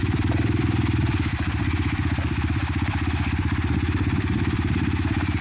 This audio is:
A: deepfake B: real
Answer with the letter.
A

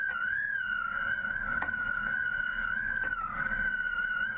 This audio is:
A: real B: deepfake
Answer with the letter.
A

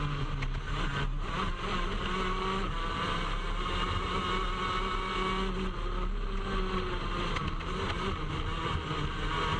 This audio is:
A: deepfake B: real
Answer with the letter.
B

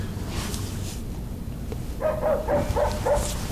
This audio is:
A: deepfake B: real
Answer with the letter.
B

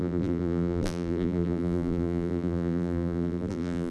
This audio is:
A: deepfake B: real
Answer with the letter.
A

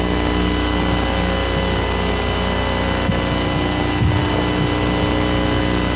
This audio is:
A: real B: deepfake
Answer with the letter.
A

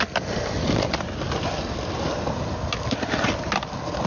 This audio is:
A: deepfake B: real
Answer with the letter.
B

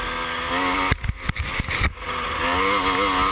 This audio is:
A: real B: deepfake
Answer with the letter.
A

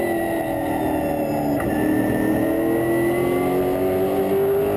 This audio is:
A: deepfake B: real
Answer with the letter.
B